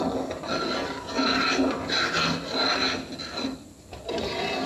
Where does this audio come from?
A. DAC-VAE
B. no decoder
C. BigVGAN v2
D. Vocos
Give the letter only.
B